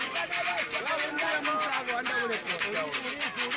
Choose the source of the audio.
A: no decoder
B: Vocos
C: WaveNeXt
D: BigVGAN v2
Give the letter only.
A